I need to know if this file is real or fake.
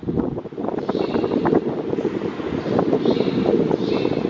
real